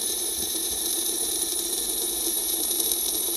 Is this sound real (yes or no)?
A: no